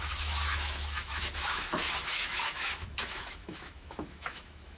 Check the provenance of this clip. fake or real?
fake